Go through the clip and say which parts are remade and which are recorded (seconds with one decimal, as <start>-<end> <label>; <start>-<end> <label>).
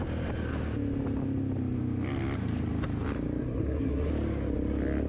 0.0-3.4 recorded; 3.4-4.1 remade; 4.1-5.1 recorded